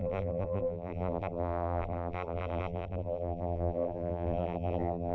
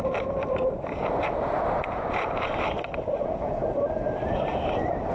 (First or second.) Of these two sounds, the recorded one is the second